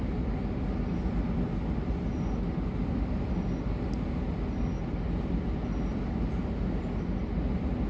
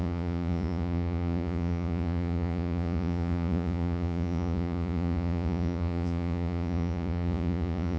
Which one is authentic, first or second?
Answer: first